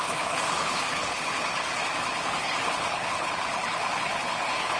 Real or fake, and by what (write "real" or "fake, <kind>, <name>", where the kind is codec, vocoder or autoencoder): fake, codec, HILCodec